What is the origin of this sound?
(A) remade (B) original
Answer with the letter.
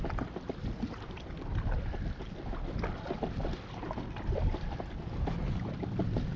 B